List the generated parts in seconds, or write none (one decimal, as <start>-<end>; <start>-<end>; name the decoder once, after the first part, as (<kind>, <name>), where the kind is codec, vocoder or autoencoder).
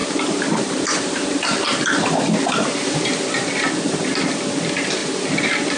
0.0-3.5 (vocoder, BigVGAN v2); 5.0-5.8